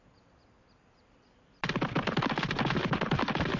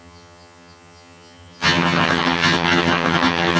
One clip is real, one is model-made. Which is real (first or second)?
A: first